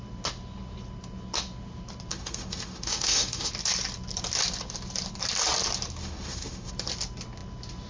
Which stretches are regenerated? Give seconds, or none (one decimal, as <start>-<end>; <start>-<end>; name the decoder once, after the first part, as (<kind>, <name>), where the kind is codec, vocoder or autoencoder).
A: 2.1-3.5 (autoencoder, DAC-VAE); 6.0-6.7